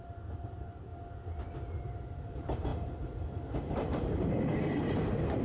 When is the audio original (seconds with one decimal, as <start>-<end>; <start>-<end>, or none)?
0.9-1.8